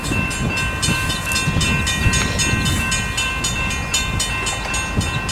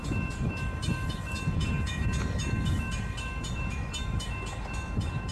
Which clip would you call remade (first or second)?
second